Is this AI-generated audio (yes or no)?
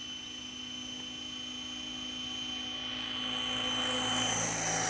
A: no